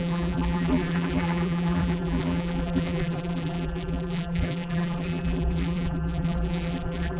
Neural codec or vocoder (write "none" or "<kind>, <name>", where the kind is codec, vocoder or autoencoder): vocoder, BigVGAN v2